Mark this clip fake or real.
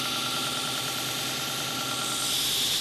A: real